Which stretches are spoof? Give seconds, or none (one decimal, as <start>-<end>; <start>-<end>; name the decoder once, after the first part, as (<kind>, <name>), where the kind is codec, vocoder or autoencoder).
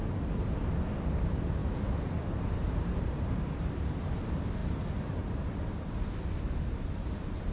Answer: 2.6-4.0 (vocoder, BigVGAN v2)